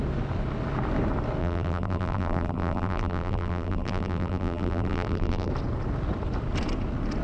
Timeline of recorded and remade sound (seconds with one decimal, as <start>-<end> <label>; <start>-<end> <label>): 0.0-1.4 recorded; 1.4-5.5 remade; 5.5-7.2 recorded